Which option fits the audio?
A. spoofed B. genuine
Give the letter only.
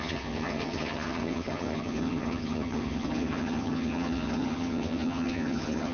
A